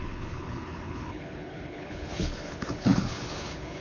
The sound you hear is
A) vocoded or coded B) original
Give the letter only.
A